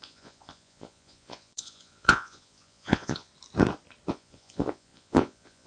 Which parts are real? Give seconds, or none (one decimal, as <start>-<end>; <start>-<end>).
3.3-4.1